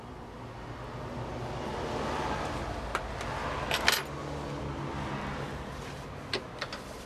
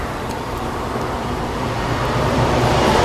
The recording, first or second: first